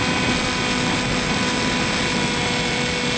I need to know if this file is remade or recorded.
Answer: recorded